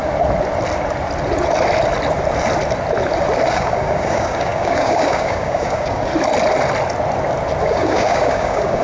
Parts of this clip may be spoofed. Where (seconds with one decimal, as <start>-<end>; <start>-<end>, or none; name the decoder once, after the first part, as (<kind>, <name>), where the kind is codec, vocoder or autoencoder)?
3.5-6.1 (codec, DAC); 7.6-8.8